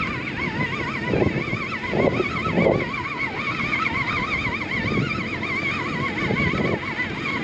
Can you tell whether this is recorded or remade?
recorded